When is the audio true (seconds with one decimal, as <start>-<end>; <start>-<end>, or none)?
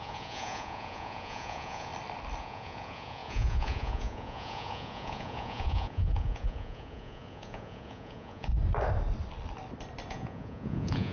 1.9-2.4; 8.5-10.1